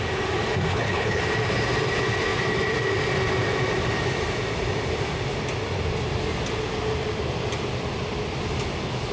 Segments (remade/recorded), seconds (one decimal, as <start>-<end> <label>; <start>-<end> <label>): 0.0-0.7 recorded; 0.7-1.2 remade; 1.2-9.1 recorded